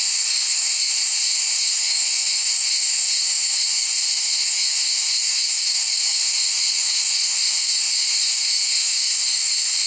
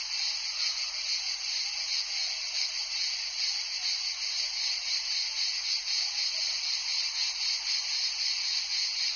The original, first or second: second